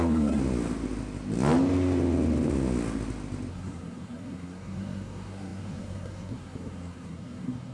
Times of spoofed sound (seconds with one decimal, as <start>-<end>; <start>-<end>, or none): 0.0-0.4; 3.5-7.7